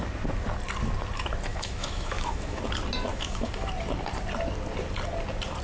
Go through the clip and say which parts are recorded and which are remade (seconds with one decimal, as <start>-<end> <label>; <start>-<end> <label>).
0.0-1.5 recorded; 1.5-2.6 remade; 2.6-3.1 recorded; 3.1-3.7 remade; 3.7-5.6 recorded